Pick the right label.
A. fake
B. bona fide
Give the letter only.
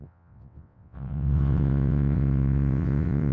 A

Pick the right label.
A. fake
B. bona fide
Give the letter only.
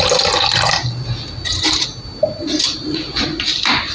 B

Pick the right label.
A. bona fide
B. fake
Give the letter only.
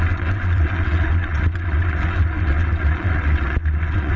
B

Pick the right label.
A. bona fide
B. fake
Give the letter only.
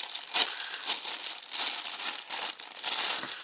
A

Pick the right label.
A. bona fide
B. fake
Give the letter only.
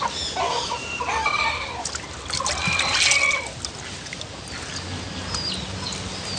A